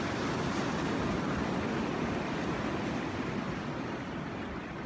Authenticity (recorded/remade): recorded